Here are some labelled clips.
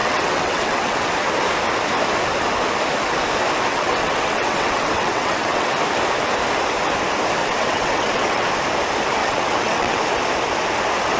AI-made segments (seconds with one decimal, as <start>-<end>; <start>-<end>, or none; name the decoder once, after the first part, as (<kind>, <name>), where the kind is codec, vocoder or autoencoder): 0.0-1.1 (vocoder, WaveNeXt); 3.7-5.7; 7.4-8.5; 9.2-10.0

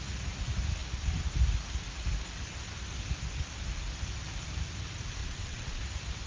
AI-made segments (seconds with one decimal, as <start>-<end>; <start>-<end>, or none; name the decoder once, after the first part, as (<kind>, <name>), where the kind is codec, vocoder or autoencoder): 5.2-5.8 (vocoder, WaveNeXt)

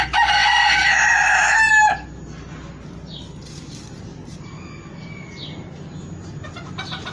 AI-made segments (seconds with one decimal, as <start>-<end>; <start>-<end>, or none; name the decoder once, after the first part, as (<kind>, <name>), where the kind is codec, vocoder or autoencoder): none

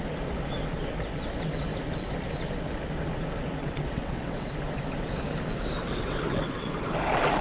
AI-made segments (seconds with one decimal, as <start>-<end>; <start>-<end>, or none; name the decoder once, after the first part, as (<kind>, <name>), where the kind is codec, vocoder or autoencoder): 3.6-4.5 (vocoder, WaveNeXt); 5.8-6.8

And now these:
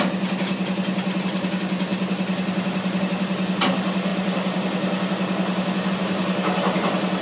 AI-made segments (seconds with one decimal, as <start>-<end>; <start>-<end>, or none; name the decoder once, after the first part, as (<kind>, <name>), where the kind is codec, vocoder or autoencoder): none

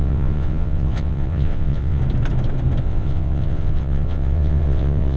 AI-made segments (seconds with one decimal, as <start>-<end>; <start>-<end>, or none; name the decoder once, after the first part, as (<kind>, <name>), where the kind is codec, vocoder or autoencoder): 0.0-2.0 (vocoder, WaveNeXt); 2.8-5.2